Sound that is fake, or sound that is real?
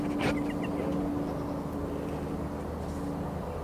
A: real